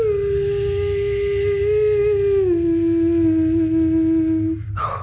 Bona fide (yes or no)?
yes